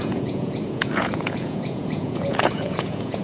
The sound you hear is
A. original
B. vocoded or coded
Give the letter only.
B